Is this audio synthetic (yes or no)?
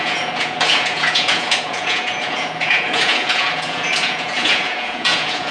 yes